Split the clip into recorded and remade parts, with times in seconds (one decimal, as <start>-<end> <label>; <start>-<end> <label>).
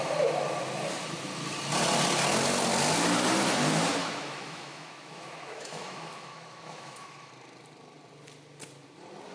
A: 0.0-4.0 recorded; 4.0-7.3 remade; 7.3-9.3 recorded